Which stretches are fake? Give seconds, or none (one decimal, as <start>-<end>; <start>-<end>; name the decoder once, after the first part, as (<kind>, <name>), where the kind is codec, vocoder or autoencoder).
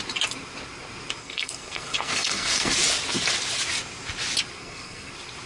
1.2-2.7 (codec, SNAC); 4.6-5.1